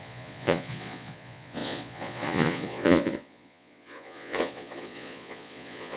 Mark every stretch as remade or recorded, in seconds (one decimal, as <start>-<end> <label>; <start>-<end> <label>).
0.0-6.0 remade